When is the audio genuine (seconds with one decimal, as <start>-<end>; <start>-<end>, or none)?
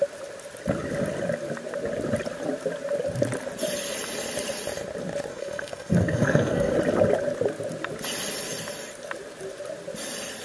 0.0-5.3; 6.7-10.4